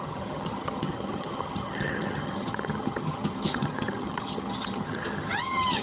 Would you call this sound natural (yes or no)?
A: no